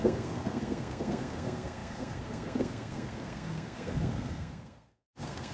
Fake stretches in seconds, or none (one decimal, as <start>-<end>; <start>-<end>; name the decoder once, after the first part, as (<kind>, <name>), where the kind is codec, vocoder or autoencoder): 0.0-5.5 (codec, SNAC)